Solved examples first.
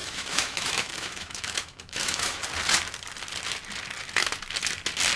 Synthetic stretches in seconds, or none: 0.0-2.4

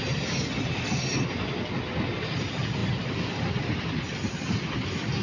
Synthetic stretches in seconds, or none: none